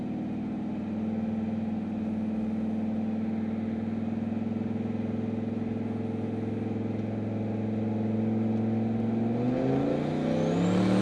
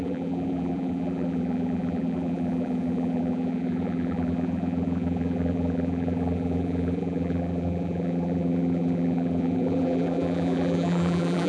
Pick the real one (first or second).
first